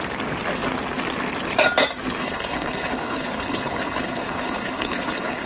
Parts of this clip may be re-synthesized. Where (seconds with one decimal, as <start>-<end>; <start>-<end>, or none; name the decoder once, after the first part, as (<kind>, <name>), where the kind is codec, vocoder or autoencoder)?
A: 2.2-5.5 (codec, HILCodec)